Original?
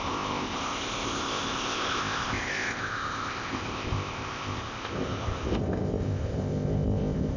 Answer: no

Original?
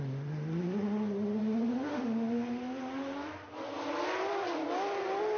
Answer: yes